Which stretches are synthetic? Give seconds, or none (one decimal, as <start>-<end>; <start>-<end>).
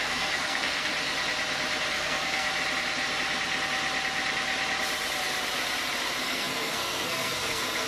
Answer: 0.0-0.9; 1.9-2.5; 6.2-7.9